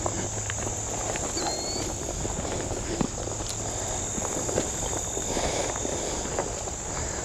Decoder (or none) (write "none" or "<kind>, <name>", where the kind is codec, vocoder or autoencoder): none